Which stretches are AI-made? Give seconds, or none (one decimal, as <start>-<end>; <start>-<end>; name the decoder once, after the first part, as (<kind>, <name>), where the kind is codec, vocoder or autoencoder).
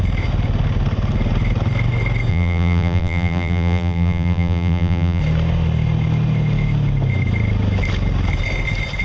2.3-5.2 (vocoder, BigVGAN v2)